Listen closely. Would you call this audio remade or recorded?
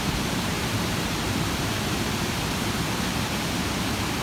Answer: remade